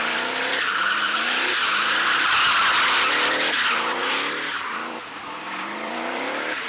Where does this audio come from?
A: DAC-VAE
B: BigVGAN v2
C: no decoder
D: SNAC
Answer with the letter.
B